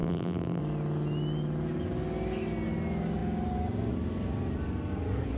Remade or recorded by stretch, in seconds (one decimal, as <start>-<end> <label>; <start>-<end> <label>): 0.0-0.6 remade; 0.6-5.4 recorded